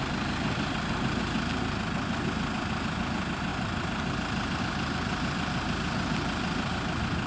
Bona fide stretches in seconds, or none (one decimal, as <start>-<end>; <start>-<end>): 0.0-7.3